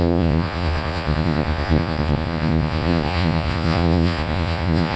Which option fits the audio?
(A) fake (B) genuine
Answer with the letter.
A